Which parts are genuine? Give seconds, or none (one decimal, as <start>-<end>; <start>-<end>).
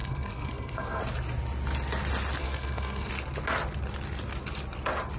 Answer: 1.0-2.4; 3.1-5.2